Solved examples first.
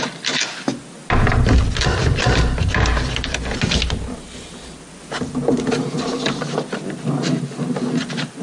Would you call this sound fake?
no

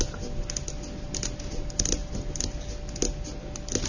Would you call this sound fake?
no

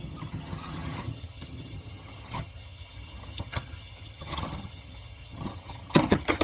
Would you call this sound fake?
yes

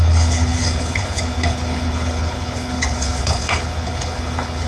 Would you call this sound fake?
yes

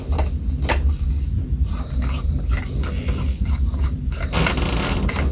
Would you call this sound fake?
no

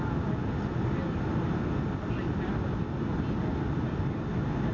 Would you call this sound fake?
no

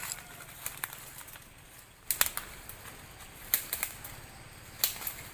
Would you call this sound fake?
no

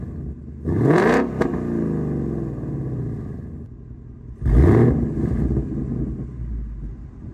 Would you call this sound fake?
no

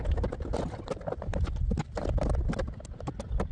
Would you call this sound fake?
no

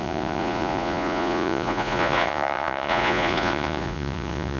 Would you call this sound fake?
yes